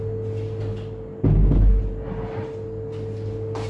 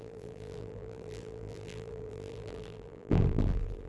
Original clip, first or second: first